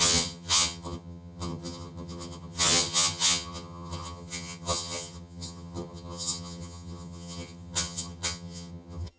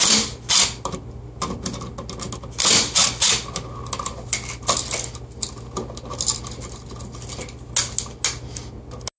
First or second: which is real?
second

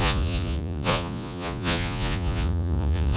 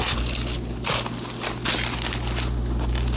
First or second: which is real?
second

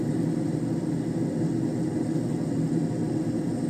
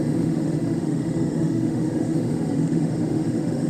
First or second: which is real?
first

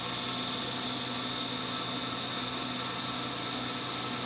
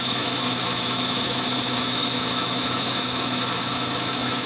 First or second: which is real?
first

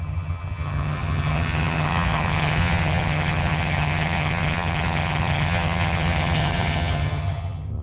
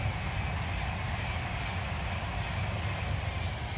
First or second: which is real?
second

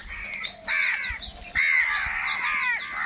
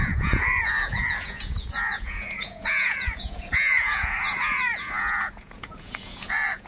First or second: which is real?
first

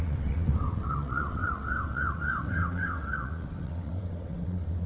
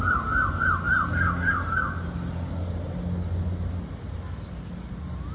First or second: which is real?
second